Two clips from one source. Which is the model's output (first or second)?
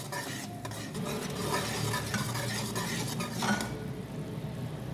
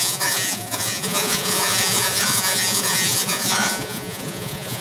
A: second